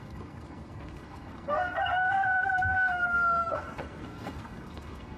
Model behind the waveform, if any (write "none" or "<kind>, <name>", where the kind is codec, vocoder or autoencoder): codec, SNAC